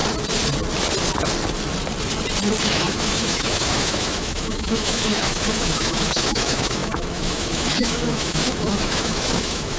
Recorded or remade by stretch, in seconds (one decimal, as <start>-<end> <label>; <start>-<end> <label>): 0.0-2.6 recorded; 2.6-9.8 remade